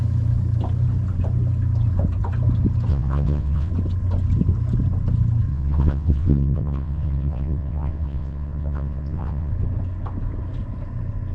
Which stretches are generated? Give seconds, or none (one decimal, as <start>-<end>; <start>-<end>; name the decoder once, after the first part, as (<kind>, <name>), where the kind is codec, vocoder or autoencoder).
2.9-3.7 (vocoder, WaveNeXt); 5.5-9.5